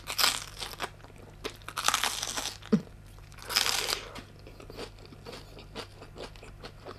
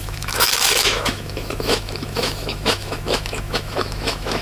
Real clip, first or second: first